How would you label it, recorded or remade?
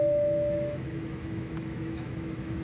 remade